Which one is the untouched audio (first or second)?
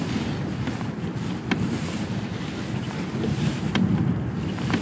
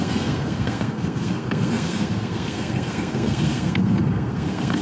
first